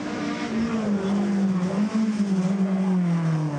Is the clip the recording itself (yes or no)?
yes